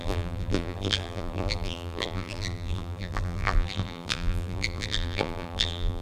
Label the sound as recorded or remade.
remade